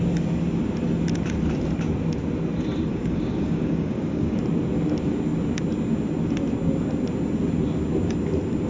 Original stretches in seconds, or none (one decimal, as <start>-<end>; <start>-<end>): 0.0-2.9; 4.4-8.7